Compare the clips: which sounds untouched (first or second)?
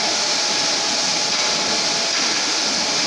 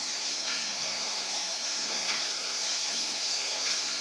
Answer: first